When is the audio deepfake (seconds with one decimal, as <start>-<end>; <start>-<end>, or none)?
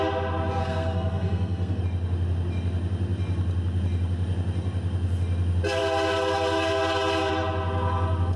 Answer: 0.6-1.8